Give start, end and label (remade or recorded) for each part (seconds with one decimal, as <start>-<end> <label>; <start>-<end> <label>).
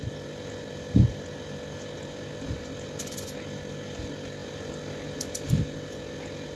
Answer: 0.0-6.6 recorded